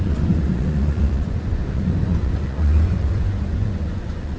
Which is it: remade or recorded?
remade